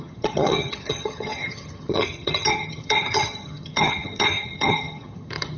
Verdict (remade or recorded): remade